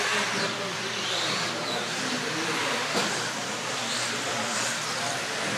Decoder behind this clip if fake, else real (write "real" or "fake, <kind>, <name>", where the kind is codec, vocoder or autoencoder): fake, vocoder, BigVGAN v2